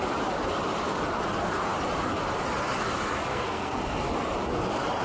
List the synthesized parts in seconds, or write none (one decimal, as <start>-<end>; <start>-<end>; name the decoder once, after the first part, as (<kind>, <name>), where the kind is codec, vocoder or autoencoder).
3.3-4.1 (codec, SNAC)